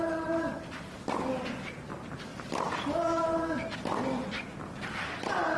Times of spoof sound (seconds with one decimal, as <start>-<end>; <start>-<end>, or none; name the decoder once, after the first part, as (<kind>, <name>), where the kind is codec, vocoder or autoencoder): none